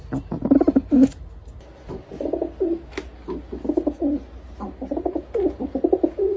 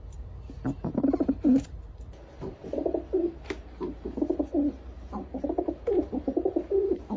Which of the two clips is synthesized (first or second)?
second